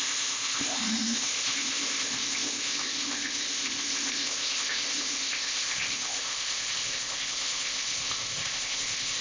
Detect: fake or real fake